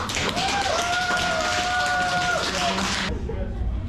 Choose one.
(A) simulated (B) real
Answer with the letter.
B